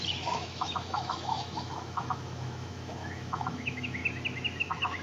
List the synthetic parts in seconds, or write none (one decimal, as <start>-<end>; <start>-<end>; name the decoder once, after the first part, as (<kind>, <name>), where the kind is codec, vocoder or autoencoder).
0.0-4.0 (autoencoder, DAC-VAE); 4.6-5.0